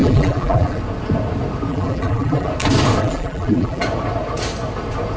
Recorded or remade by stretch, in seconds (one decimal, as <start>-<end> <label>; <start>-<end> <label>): 0.0-0.8 remade; 0.8-1.7 recorded; 1.7-2.5 remade; 2.5-3.0 recorded; 3.0-3.8 remade; 3.8-5.2 recorded